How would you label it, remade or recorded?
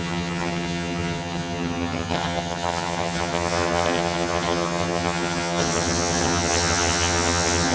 remade